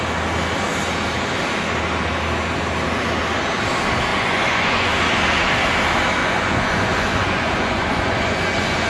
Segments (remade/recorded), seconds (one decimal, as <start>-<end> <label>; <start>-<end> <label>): 0.0-4.1 recorded; 4.1-4.9 remade; 4.9-6.2 recorded; 6.2-8.9 remade